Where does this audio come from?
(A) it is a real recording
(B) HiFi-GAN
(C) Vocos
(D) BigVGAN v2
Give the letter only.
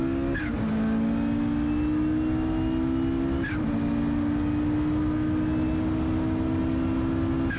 A